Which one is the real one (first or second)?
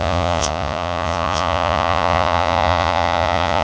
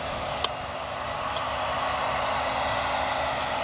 second